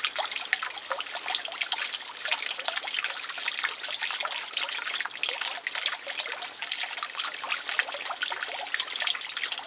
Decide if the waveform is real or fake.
real